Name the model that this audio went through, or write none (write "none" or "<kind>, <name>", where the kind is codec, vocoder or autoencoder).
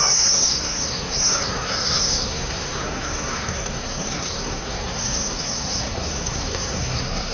codec, SNAC